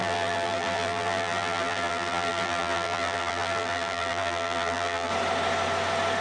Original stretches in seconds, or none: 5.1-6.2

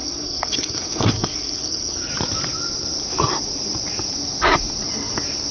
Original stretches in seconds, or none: 2.1-5.5

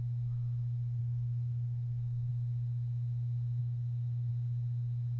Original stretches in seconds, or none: 0.0-1.0; 2.3-3.6; 4.3-5.2

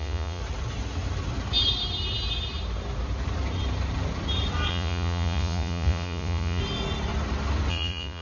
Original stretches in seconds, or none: 0.4-4.7; 6.6-7.7

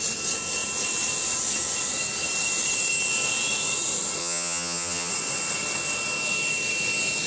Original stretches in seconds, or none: 0.0-4.2; 5.1-7.3